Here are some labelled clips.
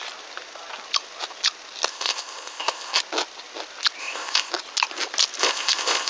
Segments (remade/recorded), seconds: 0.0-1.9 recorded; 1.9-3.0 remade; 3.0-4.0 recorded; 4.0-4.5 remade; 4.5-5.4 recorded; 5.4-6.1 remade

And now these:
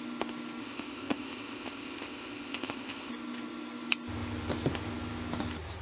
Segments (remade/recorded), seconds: 0.0-0.6 recorded; 0.6-3.1 remade; 3.1-5.8 recorded

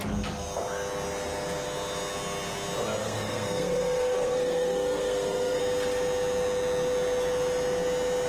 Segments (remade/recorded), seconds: 0.0-3.0 recorded; 3.0-5.6 remade; 5.6-8.3 recorded

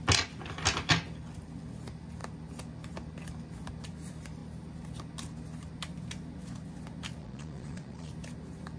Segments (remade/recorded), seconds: 0.0-7.2 recorded; 7.2-8.1 remade; 8.1-8.8 recorded

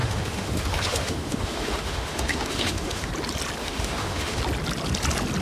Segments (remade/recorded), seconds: 0.0-3.1 remade; 3.1-3.6 recorded; 3.6-4.4 remade; 4.4-5.4 recorded